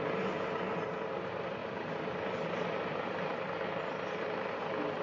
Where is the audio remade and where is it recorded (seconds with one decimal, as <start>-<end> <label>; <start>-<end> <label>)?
0.0-1.6 recorded; 1.6-4.6 remade; 4.6-5.0 recorded